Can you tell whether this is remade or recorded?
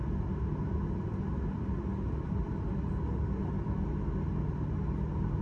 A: recorded